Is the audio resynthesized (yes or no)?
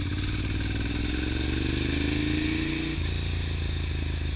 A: no